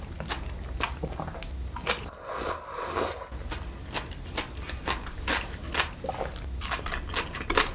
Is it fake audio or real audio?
real